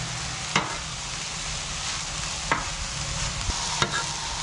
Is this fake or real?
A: real